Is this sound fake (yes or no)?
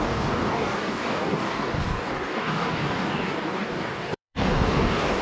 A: yes